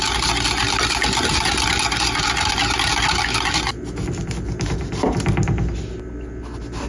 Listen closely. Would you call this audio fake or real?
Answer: real